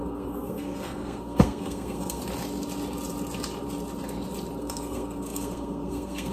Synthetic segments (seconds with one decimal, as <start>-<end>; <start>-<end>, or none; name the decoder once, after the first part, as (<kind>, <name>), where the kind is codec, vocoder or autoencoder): 0.0-2.2 (codec, SNAC); 4.6-6.3